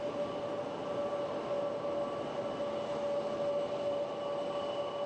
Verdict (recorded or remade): recorded